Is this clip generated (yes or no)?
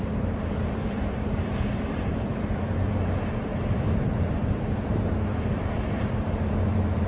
yes